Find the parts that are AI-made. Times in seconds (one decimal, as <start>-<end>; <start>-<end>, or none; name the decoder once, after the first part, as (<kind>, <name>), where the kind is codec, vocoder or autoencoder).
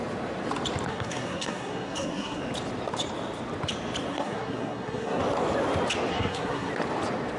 0.9-2.4 (codec, SNAC); 4.1-5.2; 6.1-6.7